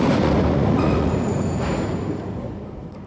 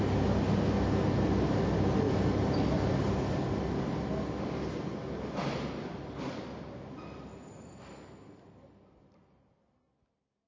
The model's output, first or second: first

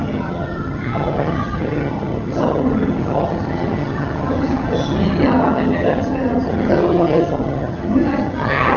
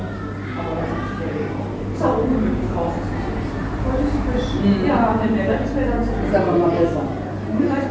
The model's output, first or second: first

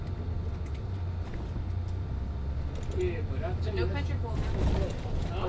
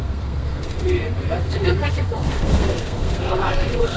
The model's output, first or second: second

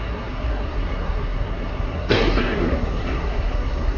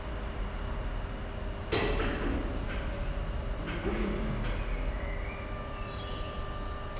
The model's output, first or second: first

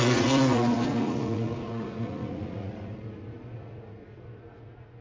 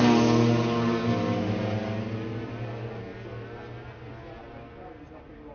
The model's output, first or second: first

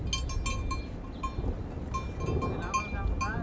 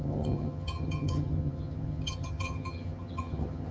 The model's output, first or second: second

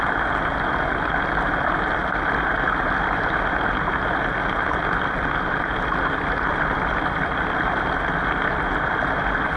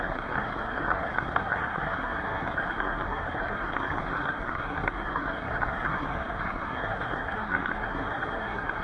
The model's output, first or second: second